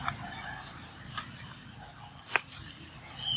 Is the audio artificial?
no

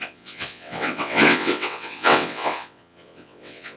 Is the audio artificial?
yes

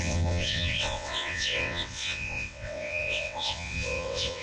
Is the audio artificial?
yes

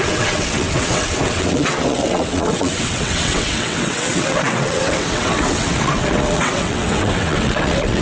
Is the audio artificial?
yes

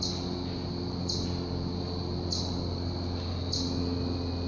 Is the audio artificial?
no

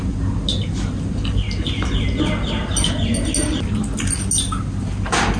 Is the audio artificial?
no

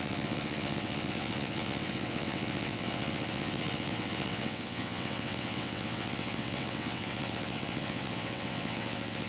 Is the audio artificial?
yes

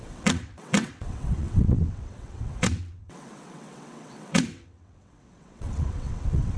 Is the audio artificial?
yes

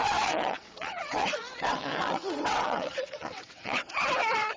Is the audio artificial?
yes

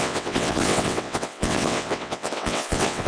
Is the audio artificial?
yes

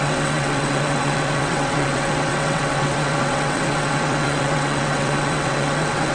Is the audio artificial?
yes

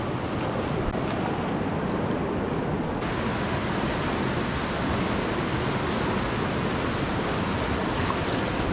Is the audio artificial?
no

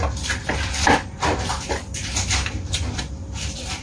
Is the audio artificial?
no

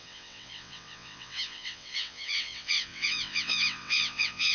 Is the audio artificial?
yes